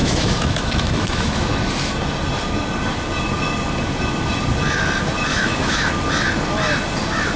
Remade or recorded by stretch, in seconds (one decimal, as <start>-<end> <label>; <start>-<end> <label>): 0.0-1.5 remade; 1.5-5.3 recorded; 5.3-5.9 remade; 5.9-7.4 recorded

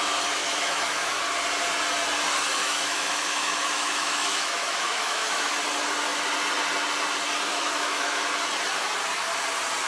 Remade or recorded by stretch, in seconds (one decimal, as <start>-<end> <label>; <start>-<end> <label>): 0.0-0.4 recorded; 0.4-1.2 remade; 1.2-2.6 recorded; 2.6-5.5 remade; 5.5-7.5 recorded; 7.5-8.2 remade; 8.2-9.9 recorded

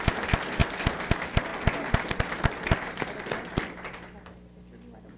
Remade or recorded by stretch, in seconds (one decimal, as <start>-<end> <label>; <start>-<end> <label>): 0.0-5.2 recorded

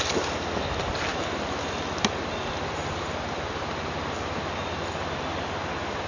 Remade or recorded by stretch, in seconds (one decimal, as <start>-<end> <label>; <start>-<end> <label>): 0.0-6.1 recorded